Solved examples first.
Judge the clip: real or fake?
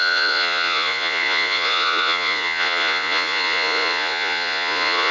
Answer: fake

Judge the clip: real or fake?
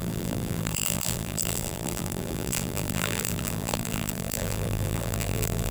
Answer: fake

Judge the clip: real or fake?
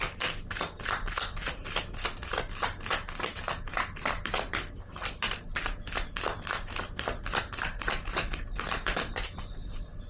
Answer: real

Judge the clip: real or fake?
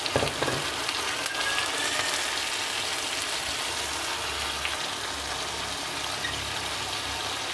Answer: real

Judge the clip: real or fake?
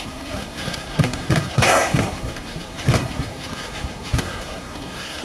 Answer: fake